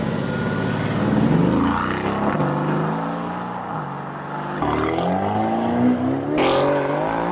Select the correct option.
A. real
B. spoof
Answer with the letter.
A